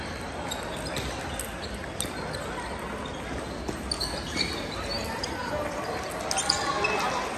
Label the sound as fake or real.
real